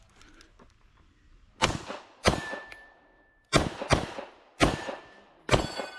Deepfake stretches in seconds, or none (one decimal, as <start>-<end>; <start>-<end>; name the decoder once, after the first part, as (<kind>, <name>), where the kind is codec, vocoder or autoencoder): 2.2-5.4 (vocoder, BigVGAN v2)